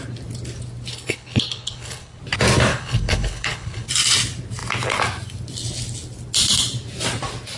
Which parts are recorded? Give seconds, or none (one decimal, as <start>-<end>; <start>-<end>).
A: 0.0-0.9; 2.2-2.7; 3.9-7.6